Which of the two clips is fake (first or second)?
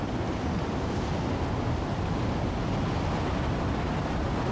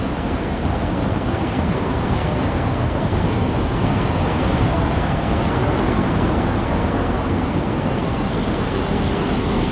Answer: second